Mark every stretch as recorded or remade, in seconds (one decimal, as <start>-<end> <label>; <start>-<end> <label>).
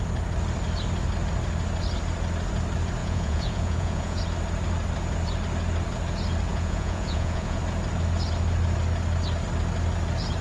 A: 0.0-3.0 recorded; 3.0-4.2 remade; 4.2-6.5 recorded; 6.5-7.6 remade; 7.6-10.4 recorded